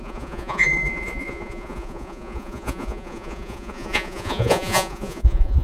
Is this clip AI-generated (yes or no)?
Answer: yes